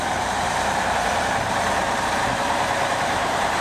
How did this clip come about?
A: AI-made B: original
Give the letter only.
A